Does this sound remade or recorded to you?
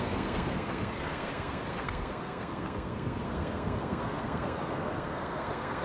remade